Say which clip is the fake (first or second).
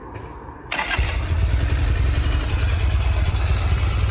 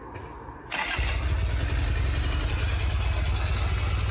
first